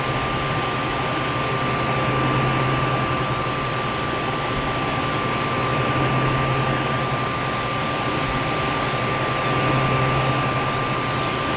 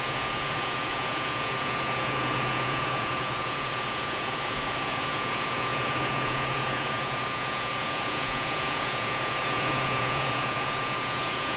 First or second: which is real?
first